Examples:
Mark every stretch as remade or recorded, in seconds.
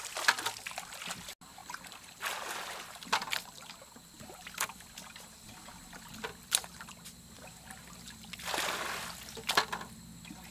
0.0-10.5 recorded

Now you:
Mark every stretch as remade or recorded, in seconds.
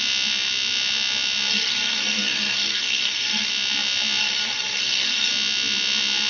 0.0-1.5 recorded; 1.5-3.5 remade; 3.5-4.2 recorded; 4.2-5.3 remade; 5.3-6.3 recorded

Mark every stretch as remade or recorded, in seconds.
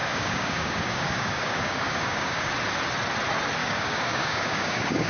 0.0-2.5 remade; 2.5-3.6 recorded; 3.6-5.1 remade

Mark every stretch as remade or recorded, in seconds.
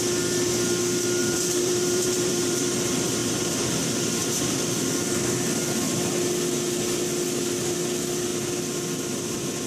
0.0-1.2 recorded; 1.2-2.7 remade; 2.7-3.2 recorded; 3.2-3.7 remade; 3.7-9.7 recorded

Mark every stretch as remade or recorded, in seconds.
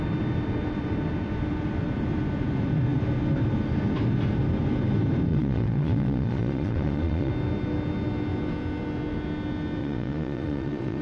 0.0-5.3 recorded; 5.3-7.3 remade; 7.3-9.8 recorded; 9.8-11.0 remade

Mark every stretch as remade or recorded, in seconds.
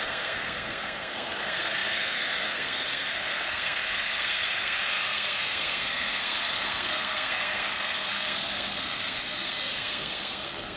0.0-10.8 remade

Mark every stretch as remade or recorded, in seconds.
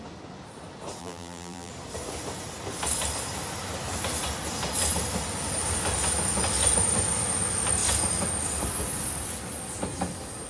0.0-1.0 recorded; 1.0-1.7 remade; 1.7-10.5 recorded